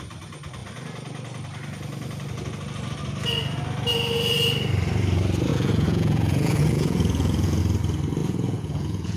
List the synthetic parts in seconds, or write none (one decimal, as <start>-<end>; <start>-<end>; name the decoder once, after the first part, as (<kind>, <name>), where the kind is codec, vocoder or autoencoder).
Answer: 5.5-7.6 (vocoder, Vocos); 8.2-9.2